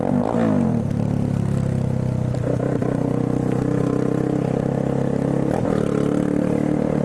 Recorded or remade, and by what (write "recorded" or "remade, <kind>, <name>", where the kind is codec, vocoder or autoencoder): recorded